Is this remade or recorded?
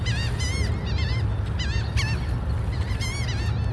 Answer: recorded